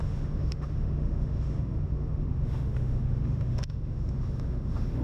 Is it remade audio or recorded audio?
remade